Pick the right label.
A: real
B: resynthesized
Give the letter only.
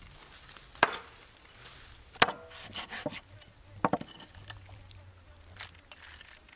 A